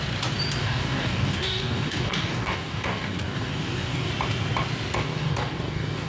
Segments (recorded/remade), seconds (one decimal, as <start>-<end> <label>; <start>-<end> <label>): 0.0-0.6 recorded; 0.6-4.1 remade; 4.1-5.1 recorded; 5.1-6.1 remade